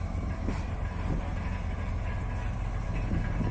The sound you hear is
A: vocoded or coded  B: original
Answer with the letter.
B